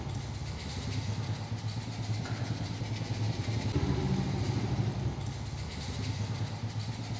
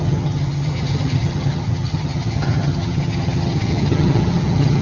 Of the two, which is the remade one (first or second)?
second